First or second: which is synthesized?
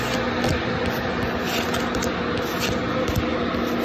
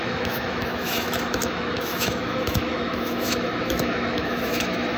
second